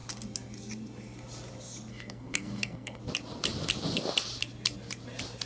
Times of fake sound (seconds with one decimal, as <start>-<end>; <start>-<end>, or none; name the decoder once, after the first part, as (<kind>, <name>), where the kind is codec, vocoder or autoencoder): 1.9-3.0 (codec, SNAC)